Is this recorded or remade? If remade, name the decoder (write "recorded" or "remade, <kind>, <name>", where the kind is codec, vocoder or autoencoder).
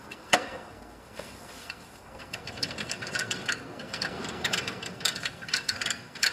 remade, codec, SNAC